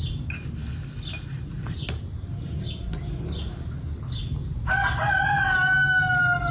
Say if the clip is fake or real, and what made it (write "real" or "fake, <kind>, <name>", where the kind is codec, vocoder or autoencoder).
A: real